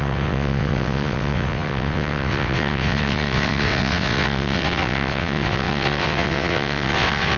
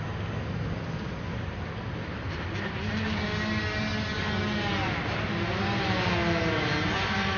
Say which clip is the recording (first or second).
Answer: second